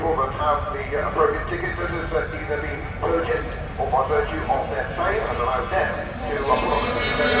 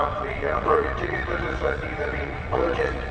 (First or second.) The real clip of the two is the first